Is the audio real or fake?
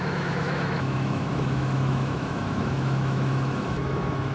fake